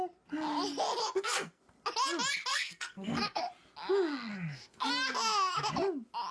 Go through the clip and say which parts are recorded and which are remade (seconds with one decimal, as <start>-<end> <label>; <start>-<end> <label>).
0.0-1.0 recorded; 1.0-1.6 remade; 1.6-2.5 recorded; 2.5-3.4 remade; 3.4-4.3 recorded; 4.3-4.9 remade; 4.9-6.3 recorded